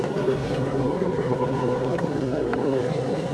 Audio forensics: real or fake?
fake